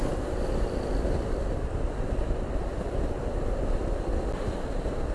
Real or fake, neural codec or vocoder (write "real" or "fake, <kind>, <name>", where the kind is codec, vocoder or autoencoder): real